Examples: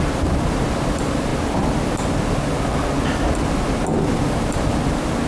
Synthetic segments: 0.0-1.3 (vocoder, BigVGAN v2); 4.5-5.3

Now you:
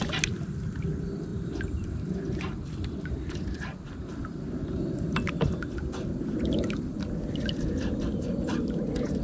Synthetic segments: 1.3-3.0 (vocoder, BigVGAN v2)

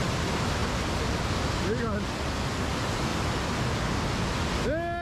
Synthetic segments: none

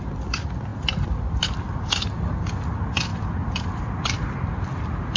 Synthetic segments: 0.7-1.9 (vocoder, BigVGAN v2)

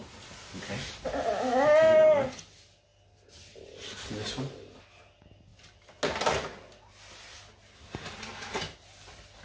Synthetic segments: 0.0-0.7 (vocoder, BigVGAN v2)

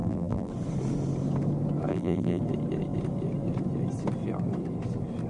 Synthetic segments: 0.0-0.5 (vocoder, BigVGAN v2); 1.9-2.4

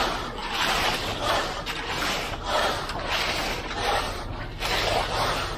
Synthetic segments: 0.4-3.2 (vocoder, BigVGAN v2); 3.6-4.4

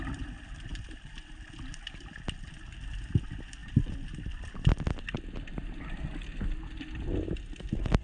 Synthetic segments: 0.7-1.5 (vocoder, BigVGAN v2)